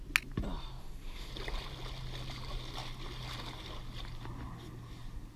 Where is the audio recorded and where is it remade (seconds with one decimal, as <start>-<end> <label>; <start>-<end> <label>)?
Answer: 0.0-0.8 recorded; 0.8-1.3 remade; 1.3-5.4 recorded